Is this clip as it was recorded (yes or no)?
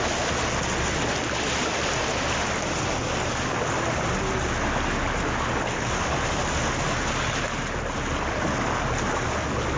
yes